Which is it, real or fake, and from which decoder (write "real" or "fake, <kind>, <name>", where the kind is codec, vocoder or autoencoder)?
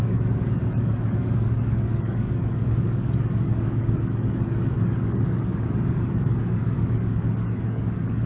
fake, codec, DAC